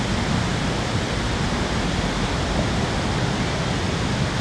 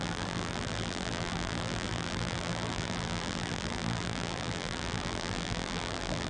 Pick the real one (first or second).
first